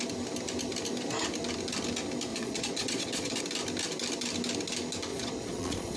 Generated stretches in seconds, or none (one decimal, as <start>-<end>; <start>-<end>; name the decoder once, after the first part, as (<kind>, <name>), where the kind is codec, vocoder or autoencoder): 2.3-3.4 (vocoder, Vocos); 5.1-6.0